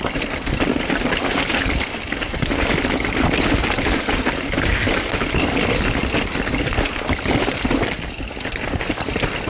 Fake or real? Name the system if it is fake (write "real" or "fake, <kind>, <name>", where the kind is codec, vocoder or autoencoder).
real